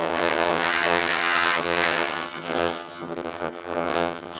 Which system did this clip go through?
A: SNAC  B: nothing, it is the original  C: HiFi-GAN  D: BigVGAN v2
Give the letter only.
C